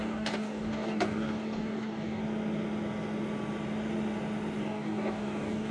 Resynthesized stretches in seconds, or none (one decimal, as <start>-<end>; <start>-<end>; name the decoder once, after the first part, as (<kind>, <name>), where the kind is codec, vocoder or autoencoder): 0.0-2.2 (codec, DAC); 4.6-5.7